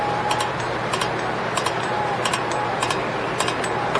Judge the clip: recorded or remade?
recorded